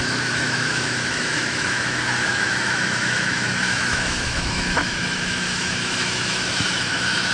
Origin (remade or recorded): remade